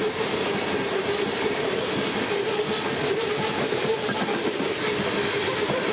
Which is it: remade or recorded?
recorded